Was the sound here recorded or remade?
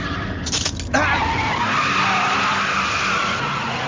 recorded